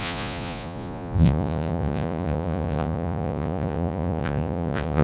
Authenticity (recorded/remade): remade